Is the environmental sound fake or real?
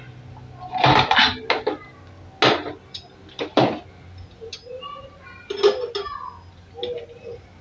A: real